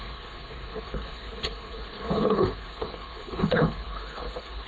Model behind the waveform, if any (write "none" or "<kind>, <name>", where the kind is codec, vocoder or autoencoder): codec, HILCodec